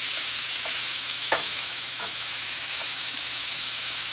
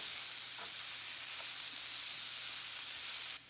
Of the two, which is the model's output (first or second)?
first